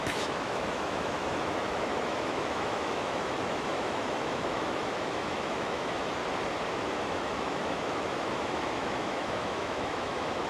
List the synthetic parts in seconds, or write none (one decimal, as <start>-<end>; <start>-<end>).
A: 0.0-6.2; 7.0-10.5